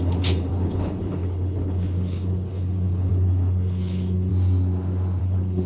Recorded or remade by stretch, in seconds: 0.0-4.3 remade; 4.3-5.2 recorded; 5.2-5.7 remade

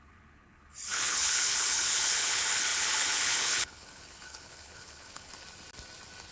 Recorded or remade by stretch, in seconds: 0.0-5.3 remade; 5.3-6.3 recorded

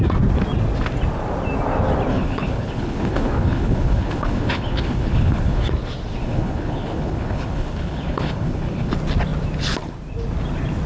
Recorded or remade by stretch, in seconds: 0.0-2.1 recorded; 2.1-5.7 remade; 5.7-6.2 recorded; 6.2-8.9 remade; 8.9-10.9 recorded

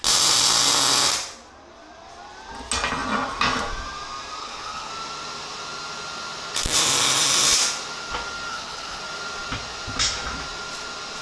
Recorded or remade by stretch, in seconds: 0.0-4.4 recorded; 4.4-4.9 remade; 4.9-8.5 recorded; 8.5-9.0 remade; 9.0-11.2 recorded

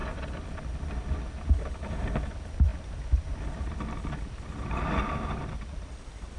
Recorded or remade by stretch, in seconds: 0.0-6.4 recorded

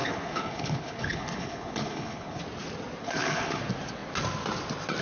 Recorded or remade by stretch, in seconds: 0.0-2.4 remade; 2.4-3.0 recorded; 3.0-3.6 remade; 3.6-5.0 recorded

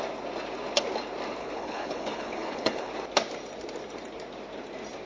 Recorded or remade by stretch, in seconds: 0.0-1.4 recorded; 1.4-2.9 remade; 2.9-5.1 recorded

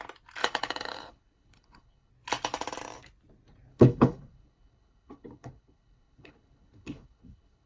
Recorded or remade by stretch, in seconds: 0.0-0.4 recorded; 0.4-2.1 remade; 2.1-3.7 recorded; 3.7-7.7 remade